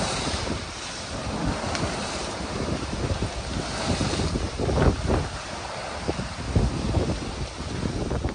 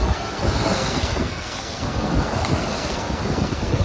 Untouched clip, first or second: first